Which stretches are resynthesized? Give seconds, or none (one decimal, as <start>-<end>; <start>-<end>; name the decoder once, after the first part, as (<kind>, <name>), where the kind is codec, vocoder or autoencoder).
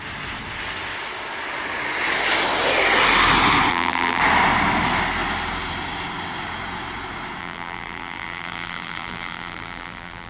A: 3.7-4.2 (vocoder, BigVGAN v2); 7.4-10.3